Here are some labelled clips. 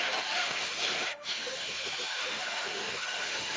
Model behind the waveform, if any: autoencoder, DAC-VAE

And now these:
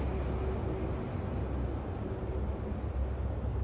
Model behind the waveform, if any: none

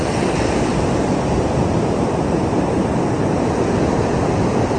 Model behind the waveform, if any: none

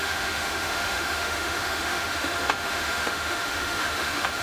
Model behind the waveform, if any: autoencoder, DAC-VAE